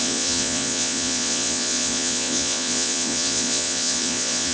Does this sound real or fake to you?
fake